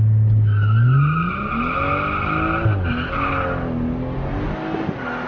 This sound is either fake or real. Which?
real